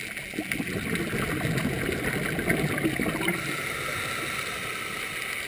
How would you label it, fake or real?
real